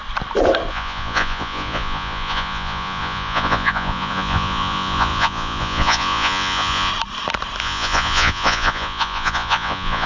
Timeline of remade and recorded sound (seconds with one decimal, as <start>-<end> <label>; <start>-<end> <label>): 0.0-0.7 recorded; 0.7-6.9 remade; 6.9-7.6 recorded; 7.6-10.1 remade